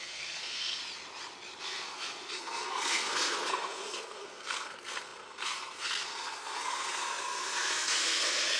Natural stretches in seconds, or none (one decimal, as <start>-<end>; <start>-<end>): 0.8-1.6